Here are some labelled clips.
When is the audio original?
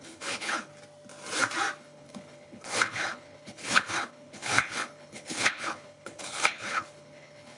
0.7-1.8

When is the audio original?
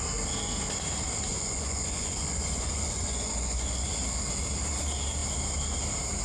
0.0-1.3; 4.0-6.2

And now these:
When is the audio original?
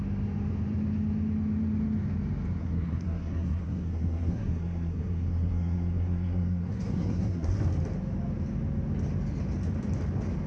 0.0-2.6; 7.6-10.5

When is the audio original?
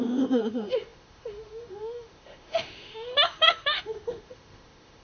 none